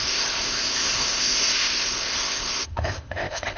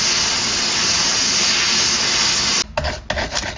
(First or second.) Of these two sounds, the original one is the second